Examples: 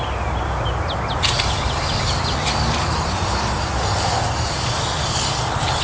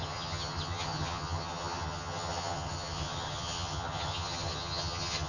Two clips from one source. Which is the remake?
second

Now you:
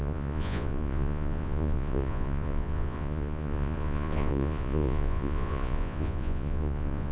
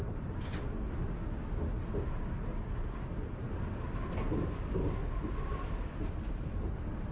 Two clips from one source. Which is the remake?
first